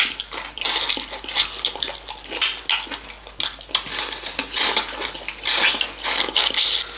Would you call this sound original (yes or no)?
yes